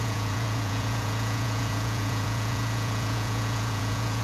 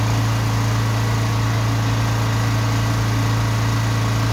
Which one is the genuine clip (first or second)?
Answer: second